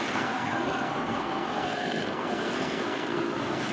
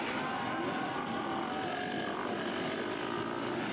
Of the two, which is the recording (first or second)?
second